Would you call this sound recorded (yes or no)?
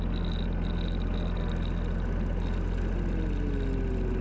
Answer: yes